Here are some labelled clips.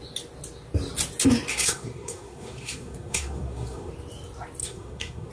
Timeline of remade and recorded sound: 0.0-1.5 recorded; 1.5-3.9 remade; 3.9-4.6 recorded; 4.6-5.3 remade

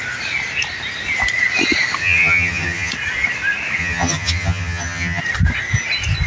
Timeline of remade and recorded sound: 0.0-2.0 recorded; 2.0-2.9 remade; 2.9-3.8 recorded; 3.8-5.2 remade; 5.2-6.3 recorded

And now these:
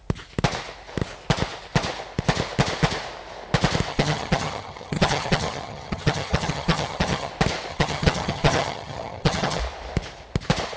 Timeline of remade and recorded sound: 0.0-3.9 recorded; 3.9-7.3 remade; 7.3-7.7 recorded; 7.7-9.6 remade; 9.6-10.8 recorded